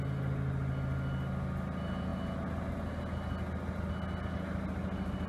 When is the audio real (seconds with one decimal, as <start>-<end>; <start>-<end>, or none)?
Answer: 0.0-5.3